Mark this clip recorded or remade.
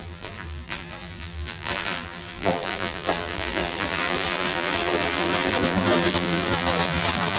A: remade